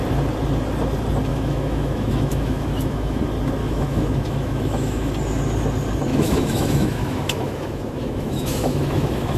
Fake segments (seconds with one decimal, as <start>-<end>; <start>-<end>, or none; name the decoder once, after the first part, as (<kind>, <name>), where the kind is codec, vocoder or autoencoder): 1.3-3.2 (autoencoder, DAC-VAE); 3.6-5.1; 6.1-9.4